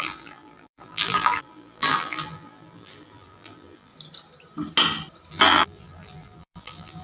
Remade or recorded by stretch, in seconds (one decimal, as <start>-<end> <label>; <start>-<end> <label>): 0.0-3.9 remade; 3.9-5.3 recorded; 5.3-7.0 remade